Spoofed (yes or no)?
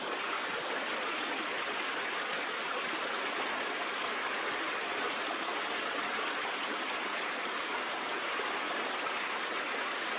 no